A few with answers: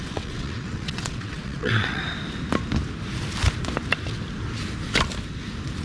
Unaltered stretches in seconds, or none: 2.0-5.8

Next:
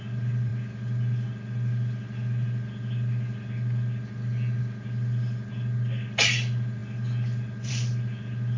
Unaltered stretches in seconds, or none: 0.0-8.6

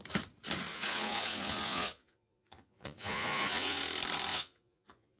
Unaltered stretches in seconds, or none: 0.0-0.7; 3.8-4.3

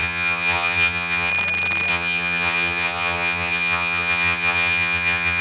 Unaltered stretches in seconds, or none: 1.3-1.9

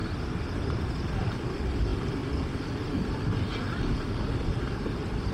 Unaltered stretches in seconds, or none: 0.0-5.3

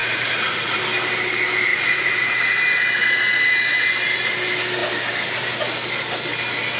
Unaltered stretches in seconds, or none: 0.8-1.7; 2.4-6.8